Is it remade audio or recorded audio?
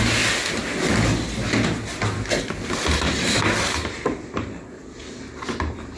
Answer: recorded